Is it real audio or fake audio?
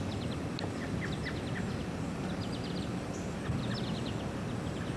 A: fake